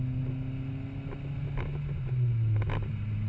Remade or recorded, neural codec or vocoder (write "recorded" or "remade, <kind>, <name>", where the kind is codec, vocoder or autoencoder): recorded